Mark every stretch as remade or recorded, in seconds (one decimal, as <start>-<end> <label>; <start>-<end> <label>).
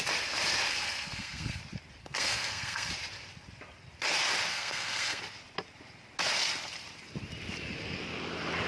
0.0-0.7 recorded; 0.7-1.6 remade; 1.6-2.0 recorded; 2.0-2.9 remade; 2.9-4.5 recorded; 4.5-5.2 remade; 5.2-8.7 recorded